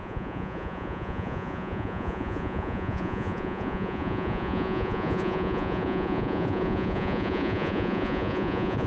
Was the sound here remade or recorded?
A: remade